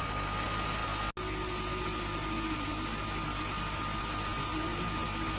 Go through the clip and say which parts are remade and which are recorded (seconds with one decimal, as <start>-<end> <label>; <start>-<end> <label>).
0.0-5.4 recorded